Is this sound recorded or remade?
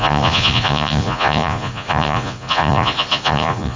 remade